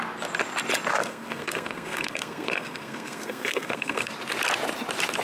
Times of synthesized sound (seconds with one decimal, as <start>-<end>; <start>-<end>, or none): 1.0-4.1